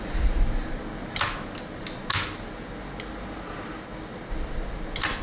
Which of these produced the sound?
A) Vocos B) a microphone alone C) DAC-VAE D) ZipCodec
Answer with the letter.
B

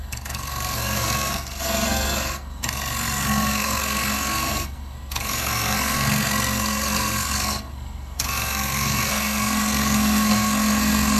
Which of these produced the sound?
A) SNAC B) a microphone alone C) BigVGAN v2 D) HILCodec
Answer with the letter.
A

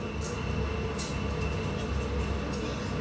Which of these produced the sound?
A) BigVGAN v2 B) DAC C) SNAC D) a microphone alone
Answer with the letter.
D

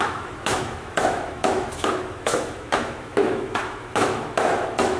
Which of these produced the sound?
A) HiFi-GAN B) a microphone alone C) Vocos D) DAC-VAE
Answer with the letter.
D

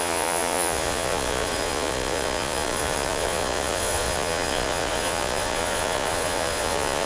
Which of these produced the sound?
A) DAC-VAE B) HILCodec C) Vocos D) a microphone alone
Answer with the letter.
C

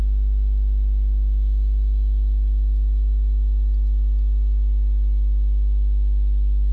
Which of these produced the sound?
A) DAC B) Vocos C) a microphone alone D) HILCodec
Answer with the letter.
C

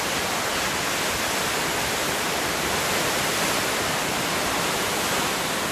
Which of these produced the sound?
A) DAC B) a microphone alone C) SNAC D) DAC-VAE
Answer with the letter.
B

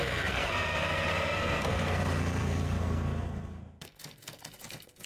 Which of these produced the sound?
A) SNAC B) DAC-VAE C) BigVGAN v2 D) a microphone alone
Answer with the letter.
A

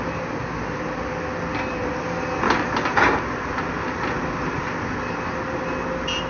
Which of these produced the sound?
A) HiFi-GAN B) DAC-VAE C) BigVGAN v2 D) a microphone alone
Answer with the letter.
D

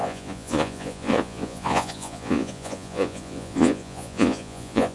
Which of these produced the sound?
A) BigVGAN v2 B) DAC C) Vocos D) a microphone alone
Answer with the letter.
C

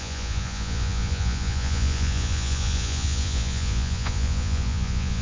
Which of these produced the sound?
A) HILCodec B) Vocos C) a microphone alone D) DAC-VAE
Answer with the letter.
B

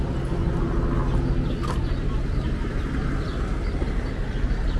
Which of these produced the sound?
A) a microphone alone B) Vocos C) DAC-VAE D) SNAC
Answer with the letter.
A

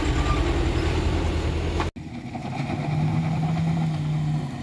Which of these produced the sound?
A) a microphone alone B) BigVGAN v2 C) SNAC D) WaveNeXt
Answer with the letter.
A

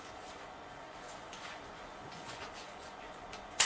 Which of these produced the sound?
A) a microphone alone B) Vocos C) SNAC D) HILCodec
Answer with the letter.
B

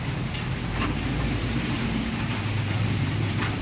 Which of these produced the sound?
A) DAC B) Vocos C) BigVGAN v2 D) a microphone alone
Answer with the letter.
C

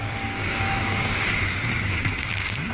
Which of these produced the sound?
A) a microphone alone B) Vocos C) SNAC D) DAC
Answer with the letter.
D